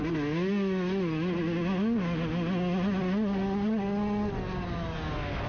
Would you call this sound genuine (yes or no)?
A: yes